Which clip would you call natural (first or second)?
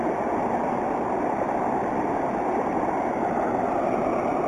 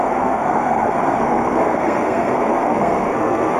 first